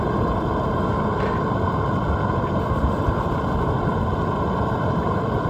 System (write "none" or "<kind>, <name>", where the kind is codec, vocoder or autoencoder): none